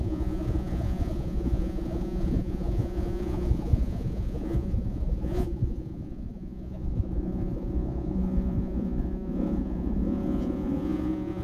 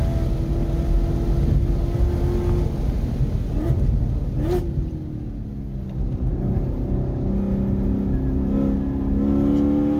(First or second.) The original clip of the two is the second